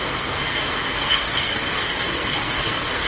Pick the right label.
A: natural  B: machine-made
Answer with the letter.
B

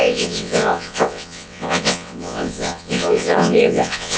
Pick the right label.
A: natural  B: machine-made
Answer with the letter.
B